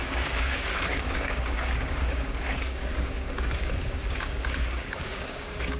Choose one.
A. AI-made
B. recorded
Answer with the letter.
A